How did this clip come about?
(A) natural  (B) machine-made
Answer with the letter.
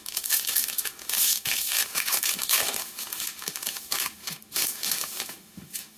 B